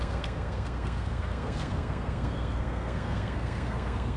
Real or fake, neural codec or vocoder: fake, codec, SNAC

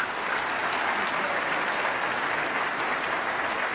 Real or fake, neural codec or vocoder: real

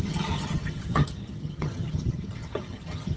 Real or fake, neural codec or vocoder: fake, vocoder, HiFi-GAN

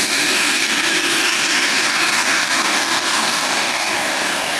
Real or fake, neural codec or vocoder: fake, codec, DAC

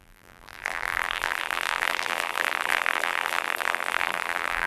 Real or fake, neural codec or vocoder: fake, vocoder, BigVGAN v2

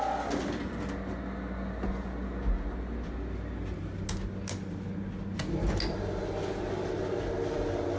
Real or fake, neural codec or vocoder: real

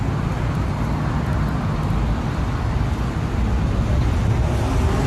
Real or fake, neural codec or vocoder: real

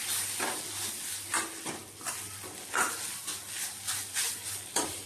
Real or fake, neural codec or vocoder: real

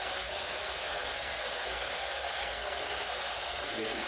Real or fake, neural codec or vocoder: fake, codec, SNAC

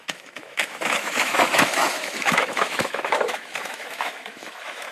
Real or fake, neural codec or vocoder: fake, autoencoder, DAC-VAE